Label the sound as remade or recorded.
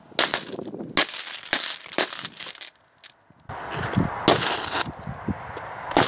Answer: recorded